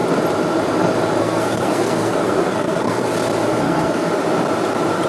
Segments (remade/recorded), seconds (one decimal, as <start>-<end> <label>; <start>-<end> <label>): 0.0-1.2 recorded; 1.2-3.1 remade; 3.1-3.5 recorded; 3.5-4.1 remade; 4.1-5.1 recorded